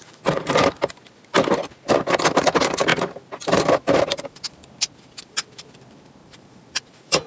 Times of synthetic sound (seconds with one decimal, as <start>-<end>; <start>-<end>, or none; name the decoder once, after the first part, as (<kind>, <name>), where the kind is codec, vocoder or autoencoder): 0.0-0.5 (vocoder, Vocos); 6.2-7.3